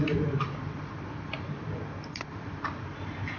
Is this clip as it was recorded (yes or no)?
no